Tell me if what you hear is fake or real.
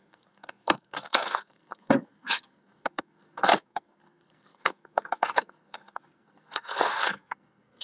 fake